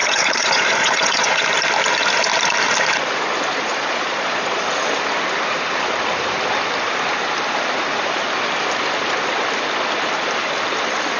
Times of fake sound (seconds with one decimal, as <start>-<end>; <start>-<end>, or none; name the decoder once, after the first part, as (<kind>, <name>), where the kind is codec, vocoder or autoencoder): 0.0-1.4 (vocoder, Vocos); 3.7-4.6